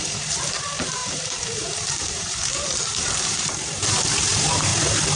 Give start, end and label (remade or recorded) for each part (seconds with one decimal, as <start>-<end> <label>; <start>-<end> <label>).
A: 0.0-4.7 remade; 4.7-5.2 recorded